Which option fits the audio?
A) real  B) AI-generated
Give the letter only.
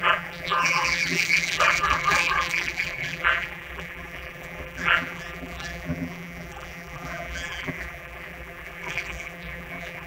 B